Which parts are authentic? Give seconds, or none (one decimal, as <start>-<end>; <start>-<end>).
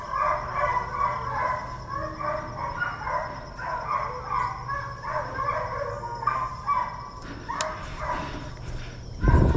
0.0-5.9; 6.5-9.6